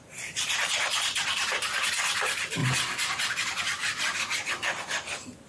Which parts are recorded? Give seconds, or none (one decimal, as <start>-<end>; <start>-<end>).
2.6-3.3